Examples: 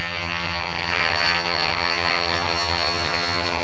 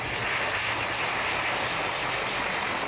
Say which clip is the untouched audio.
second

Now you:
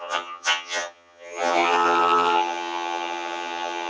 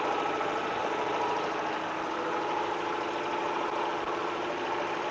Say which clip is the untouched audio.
second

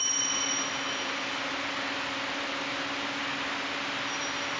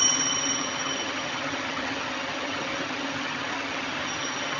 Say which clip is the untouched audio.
first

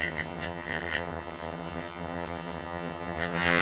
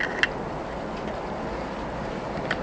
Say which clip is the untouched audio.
second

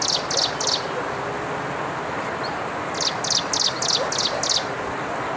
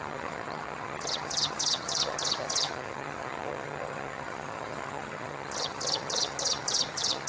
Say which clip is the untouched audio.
first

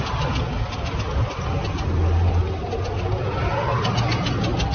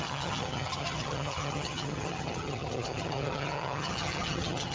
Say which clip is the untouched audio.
first